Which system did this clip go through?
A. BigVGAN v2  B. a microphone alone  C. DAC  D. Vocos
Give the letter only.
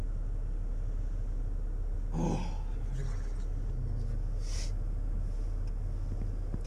B